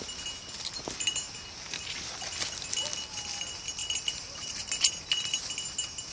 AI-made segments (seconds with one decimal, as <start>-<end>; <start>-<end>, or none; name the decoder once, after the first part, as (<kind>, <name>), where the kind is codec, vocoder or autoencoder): 3.8-4.9 (vocoder, BigVGAN v2)